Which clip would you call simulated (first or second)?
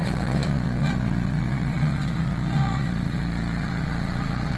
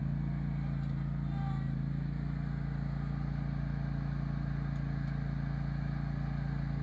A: first